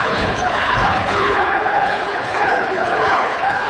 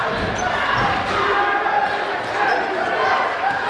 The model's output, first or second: first